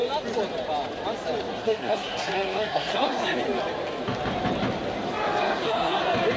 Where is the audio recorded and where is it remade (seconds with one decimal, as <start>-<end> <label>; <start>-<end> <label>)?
0.0-1.5 recorded; 1.5-3.4 remade; 3.4-5.4 recorded; 5.4-6.0 remade; 6.0-6.4 recorded